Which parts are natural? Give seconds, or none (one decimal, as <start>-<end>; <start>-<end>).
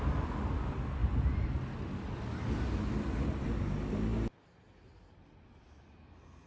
0.0-6.5